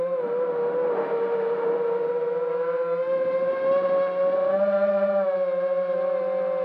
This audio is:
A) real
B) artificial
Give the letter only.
A